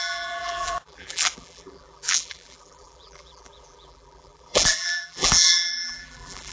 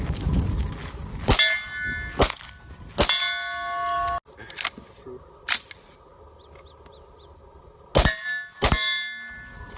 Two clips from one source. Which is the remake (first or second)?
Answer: first